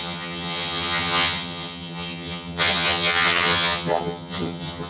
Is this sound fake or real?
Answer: fake